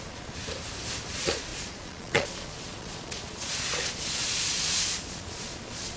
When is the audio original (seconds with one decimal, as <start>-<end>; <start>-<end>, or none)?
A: 0.4-1.1